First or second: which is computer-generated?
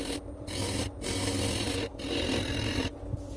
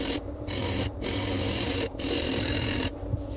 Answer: second